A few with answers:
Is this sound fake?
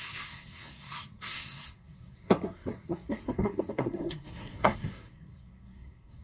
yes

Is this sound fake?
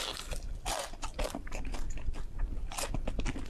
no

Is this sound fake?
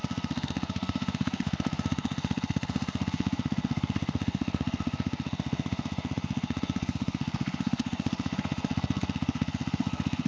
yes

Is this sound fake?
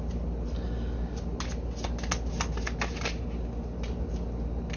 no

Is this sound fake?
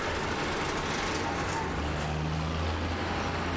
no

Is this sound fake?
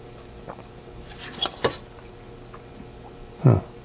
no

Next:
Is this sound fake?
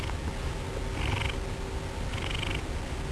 no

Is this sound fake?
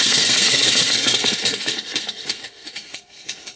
yes